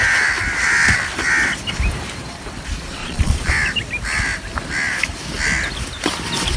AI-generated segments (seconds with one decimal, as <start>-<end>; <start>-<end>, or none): 3.0-3.5

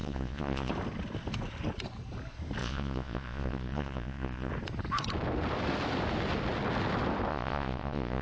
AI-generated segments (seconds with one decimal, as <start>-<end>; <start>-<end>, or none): 0.0-0.7; 2.6-4.5; 7.3-8.2

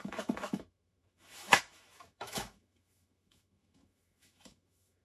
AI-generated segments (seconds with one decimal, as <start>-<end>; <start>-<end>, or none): 0.0-5.0

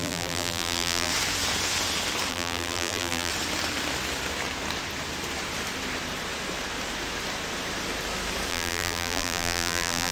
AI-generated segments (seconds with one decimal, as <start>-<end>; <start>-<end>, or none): 0.0-1.1; 2.3-3.3; 8.5-10.1

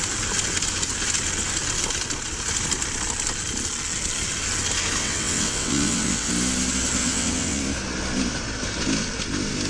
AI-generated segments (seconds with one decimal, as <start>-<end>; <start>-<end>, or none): 5.0-6.3; 7.0-7.6

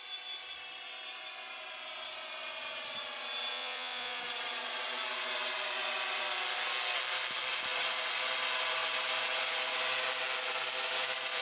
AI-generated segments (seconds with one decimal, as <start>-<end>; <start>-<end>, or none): 3.5-4.2

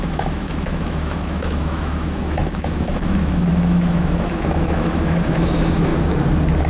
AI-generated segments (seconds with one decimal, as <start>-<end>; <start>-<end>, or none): 0.0-5.9